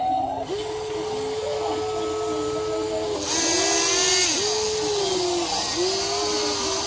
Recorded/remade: recorded